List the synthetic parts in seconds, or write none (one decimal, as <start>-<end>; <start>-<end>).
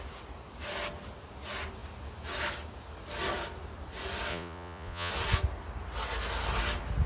4.3-5.1